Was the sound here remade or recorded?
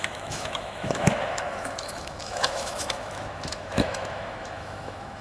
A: remade